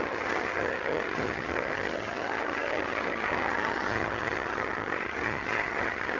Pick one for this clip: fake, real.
fake